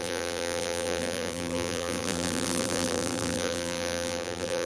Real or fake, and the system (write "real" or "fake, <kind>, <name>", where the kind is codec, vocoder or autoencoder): fake, vocoder, BigVGAN v2